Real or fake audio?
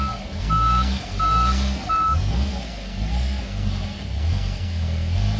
fake